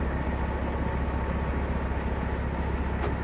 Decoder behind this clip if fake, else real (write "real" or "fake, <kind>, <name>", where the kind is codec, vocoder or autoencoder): real